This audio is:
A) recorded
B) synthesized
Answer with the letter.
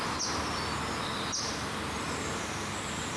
A